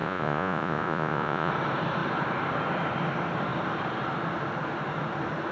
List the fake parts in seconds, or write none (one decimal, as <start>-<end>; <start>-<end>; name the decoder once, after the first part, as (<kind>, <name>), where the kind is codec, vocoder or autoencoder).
0.0-1.5 (vocoder, Vocos)